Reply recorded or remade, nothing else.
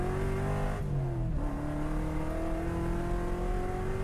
recorded